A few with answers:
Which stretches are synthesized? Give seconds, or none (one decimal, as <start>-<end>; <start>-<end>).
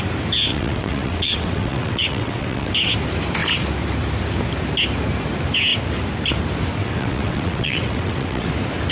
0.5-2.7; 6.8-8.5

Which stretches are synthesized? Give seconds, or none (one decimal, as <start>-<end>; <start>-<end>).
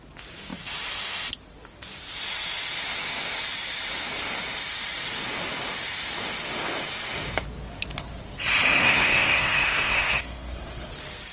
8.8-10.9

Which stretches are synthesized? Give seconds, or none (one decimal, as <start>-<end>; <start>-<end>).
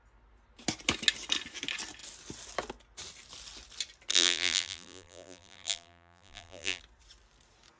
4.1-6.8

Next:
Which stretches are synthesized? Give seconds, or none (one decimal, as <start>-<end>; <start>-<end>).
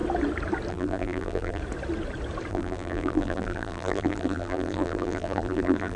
0.7-1.6; 2.5-6.0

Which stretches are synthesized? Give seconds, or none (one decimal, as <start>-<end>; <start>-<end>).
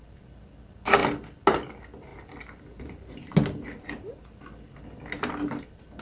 none